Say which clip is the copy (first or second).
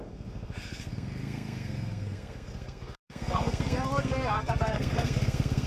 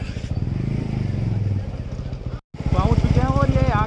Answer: first